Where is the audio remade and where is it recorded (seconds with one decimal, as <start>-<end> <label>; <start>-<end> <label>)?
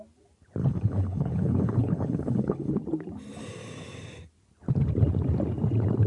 0.0-0.6 recorded; 0.6-2.7 remade; 2.7-6.1 recorded